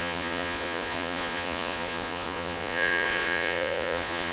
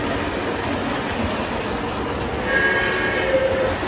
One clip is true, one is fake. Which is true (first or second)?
second